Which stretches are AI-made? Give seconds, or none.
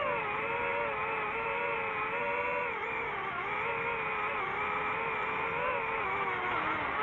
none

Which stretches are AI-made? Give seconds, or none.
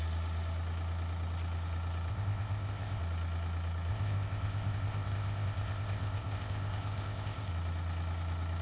2.1-3.0 (codec, ZipCodec); 3.9-7.5